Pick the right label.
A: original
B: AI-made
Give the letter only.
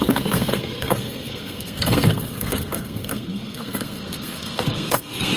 B